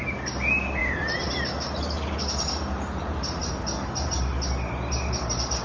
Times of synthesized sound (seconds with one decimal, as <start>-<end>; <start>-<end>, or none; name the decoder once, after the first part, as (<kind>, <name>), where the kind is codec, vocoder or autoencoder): 0.8-1.3 (vocoder, BigVGAN v2)